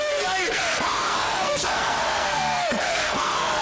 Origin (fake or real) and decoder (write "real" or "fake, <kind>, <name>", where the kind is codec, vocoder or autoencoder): fake, codec, SNAC